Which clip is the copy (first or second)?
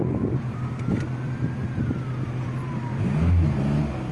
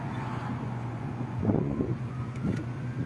second